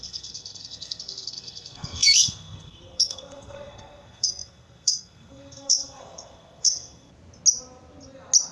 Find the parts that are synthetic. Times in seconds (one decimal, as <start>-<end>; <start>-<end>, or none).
0.0-7.1